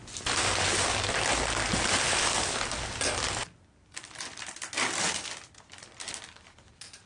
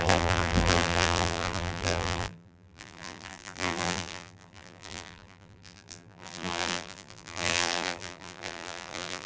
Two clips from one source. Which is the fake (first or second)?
second